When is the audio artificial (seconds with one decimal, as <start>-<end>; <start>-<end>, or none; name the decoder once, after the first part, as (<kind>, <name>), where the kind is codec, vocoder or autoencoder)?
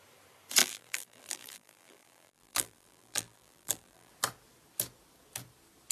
0.6-4.1 (vocoder, BigVGAN v2)